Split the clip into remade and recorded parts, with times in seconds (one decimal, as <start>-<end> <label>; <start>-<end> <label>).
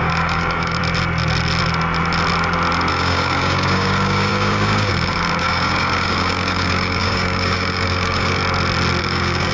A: 0.0-0.8 remade; 0.8-2.9 recorded; 2.9-8.4 remade; 8.4-9.0 recorded; 9.0-9.5 remade